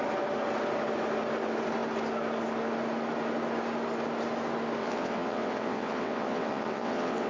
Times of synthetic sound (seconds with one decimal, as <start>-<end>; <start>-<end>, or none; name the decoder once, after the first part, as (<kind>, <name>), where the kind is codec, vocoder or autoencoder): 4.8-7.3 (vocoder, WaveNeXt)